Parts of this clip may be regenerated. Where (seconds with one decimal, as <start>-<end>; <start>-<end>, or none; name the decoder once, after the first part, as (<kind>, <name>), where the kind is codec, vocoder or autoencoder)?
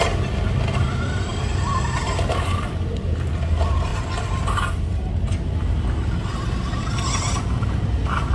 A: none